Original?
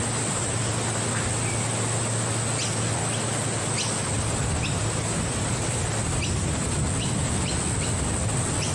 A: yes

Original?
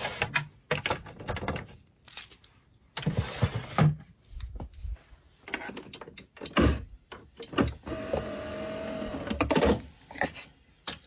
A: yes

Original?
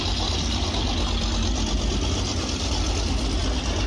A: yes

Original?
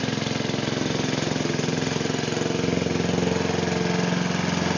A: yes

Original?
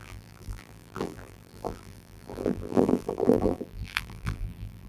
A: no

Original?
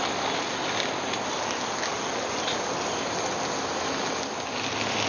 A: yes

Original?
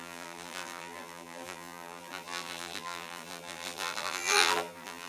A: no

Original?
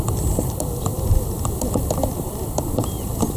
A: no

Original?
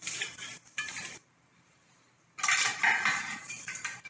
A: no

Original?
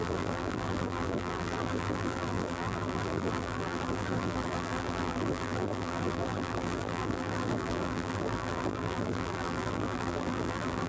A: no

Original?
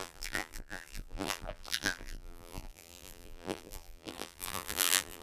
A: no